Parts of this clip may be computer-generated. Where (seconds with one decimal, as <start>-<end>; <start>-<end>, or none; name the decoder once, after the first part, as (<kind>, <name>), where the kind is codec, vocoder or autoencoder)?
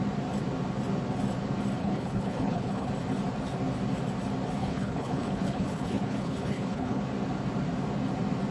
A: 1.8-2.9 (codec, HILCodec); 4.6-7.0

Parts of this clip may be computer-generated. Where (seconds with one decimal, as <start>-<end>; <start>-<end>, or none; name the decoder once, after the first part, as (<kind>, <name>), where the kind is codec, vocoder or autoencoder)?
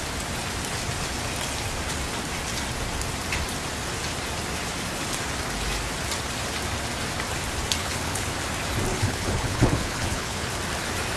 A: 7.8-8.3 (codec, HILCodec); 8.9-10.5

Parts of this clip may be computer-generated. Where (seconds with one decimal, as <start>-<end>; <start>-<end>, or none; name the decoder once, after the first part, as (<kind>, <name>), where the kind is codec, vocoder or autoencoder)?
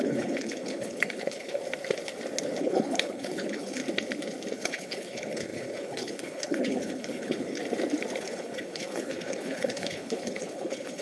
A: 0.0-1.6 (codec, HILCodec); 2.6-3.8; 4.5-7.6; 8.2-11.0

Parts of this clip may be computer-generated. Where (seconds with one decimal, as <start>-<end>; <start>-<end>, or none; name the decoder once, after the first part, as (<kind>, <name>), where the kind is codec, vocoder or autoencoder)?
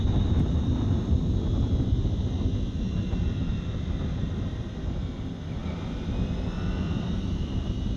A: none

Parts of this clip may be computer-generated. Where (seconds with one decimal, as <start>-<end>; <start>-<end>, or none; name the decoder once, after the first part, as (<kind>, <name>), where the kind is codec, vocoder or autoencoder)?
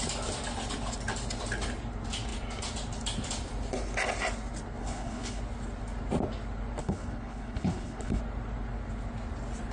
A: 4.8-5.4 (codec, HILCodec); 6.8-8.2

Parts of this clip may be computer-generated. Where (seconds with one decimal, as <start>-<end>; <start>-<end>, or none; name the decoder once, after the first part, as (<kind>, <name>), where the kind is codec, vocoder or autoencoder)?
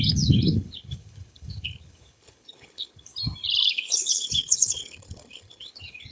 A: 0.0-3.1 (codec, HILCodec); 3.6-6.1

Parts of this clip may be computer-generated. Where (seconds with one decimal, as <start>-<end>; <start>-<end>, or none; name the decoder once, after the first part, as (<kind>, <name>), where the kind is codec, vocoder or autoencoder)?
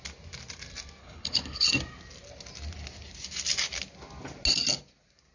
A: 1.0-1.7 (codec, HILCodec)